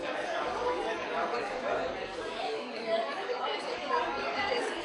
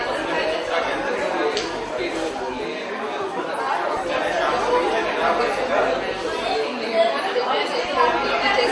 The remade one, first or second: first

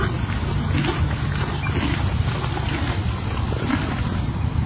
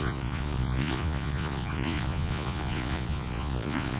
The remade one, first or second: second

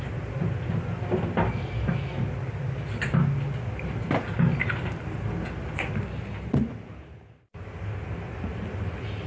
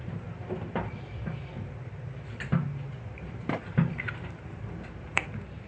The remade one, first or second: second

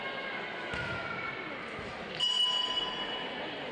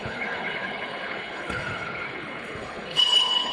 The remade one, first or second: second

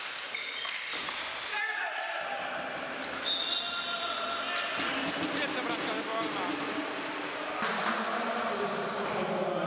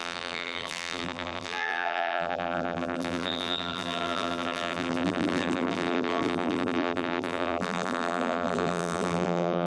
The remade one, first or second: second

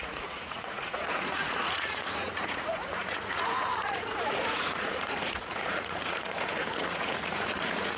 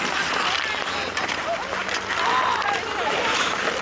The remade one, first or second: first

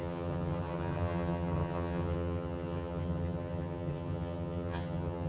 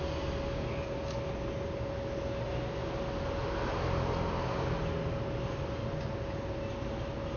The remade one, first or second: first